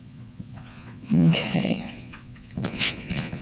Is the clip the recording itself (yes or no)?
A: no